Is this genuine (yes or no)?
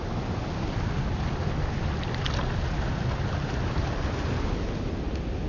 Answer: yes